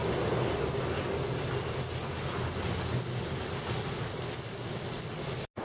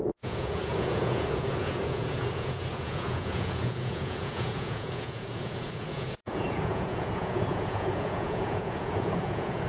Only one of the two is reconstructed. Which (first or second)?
second